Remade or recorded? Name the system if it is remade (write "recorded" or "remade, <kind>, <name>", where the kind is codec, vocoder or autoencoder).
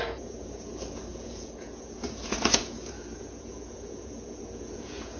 remade, vocoder, Vocos